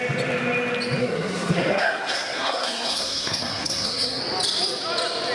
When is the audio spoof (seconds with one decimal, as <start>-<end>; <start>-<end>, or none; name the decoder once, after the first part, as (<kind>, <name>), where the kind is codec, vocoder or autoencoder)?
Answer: 1.0-4.2 (codec, SNAC)

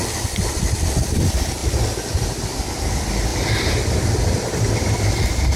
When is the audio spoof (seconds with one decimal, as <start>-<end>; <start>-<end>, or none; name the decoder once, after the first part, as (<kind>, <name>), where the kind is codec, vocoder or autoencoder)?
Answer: none

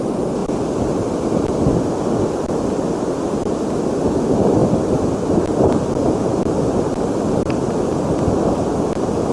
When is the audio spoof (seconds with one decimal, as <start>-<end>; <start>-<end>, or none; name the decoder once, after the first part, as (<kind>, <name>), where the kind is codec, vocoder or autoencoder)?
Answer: none

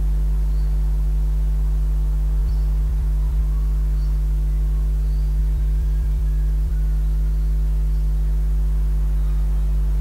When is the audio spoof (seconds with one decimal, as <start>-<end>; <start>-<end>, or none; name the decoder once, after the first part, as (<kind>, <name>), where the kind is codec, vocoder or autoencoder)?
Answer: 2.4-3.4 (vocoder, BigVGAN v2); 5.4-6.7

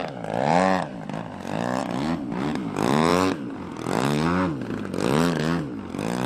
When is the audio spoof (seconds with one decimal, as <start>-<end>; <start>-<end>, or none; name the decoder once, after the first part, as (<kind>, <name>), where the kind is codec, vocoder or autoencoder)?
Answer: none